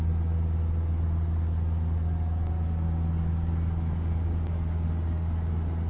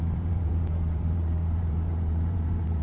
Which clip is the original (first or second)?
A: first